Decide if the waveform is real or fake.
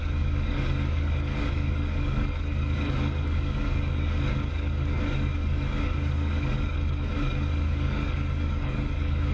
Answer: fake